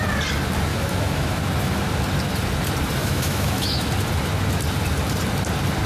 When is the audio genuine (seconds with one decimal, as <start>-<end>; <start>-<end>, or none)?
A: 0.0-0.7; 1.4-3.0; 3.9-5.9